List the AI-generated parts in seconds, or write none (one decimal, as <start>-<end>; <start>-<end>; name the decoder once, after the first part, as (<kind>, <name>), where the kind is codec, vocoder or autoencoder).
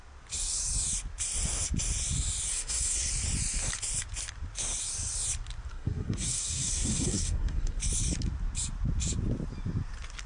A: 2.5-3.1 (codec, SNAC); 5.7-7.8